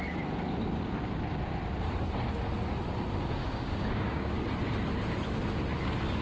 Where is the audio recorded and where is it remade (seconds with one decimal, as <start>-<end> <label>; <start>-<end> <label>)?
0.0-3.4 recorded; 3.4-4.5 remade; 4.5-6.2 recorded